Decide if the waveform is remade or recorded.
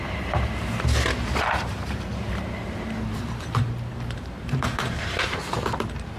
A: remade